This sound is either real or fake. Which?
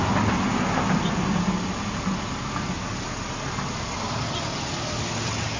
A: real